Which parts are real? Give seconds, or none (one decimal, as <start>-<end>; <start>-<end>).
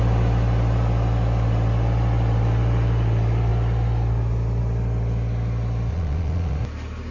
0.0-5.9; 6.6-7.1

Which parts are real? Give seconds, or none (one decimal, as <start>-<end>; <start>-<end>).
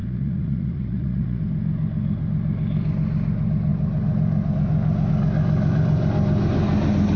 1.4-7.2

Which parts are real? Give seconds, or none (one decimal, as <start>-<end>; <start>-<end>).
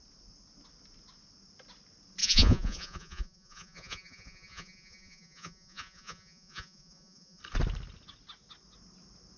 0.0-2.2; 7.4-9.4